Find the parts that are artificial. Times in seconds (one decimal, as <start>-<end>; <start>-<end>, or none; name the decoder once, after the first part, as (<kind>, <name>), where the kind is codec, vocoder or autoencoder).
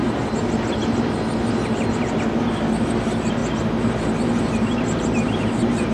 2.9-3.4 (vocoder, BigVGAN v2); 4.4-5.9